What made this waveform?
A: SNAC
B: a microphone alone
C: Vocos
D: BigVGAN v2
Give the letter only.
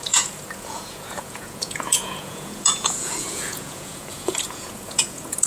C